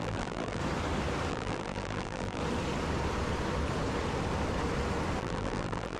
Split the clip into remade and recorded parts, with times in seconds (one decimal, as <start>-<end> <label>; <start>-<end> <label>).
0.0-0.6 remade; 0.6-1.3 recorded; 1.3-2.4 remade; 2.4-5.2 recorded; 5.2-6.0 remade